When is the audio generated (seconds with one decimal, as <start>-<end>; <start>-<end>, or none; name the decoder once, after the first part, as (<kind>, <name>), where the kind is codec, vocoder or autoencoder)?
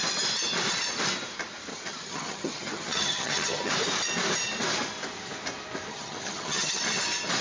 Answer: 1.7-3.7 (vocoder, HiFi-GAN); 5.9-6.8